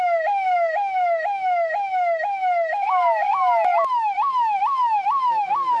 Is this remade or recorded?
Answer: remade